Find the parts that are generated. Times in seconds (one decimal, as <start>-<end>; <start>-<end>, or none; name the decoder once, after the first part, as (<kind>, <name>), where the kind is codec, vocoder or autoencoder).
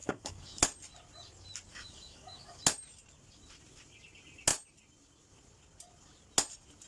0.0-0.6 (codec, DAC); 1.7-2.6